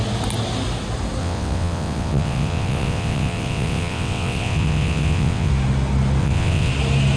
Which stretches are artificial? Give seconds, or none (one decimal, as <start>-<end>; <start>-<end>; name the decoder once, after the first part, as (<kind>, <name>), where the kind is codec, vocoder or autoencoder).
1.2-5.5 (vocoder, WaveNeXt); 6.2-6.7